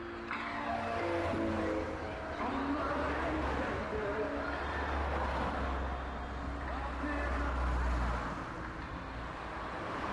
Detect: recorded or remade recorded